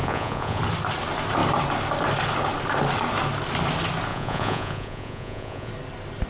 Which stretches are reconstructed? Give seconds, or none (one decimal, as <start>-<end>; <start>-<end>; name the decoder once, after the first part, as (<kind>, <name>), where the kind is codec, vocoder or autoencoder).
0.0-0.6 (vocoder, Vocos); 4.1-5.7